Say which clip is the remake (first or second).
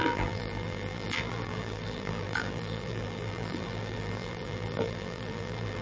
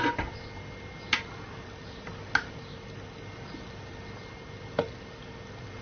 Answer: first